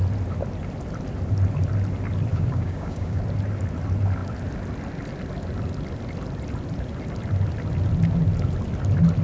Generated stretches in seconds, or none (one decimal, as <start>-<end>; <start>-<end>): 2.3-3.2